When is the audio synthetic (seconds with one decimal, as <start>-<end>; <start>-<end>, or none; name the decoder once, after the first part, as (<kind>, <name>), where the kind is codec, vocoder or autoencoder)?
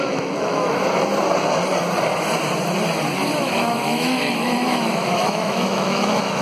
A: 0.0-0.8 (autoencoder, DAC-VAE); 3.4-6.4